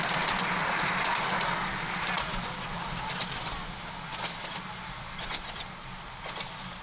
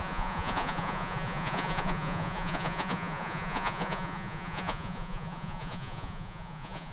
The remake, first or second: second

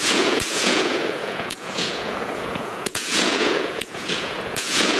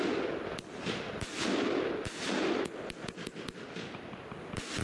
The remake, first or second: first